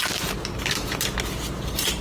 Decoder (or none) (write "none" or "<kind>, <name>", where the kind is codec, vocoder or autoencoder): none